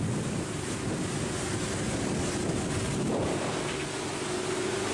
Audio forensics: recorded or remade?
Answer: recorded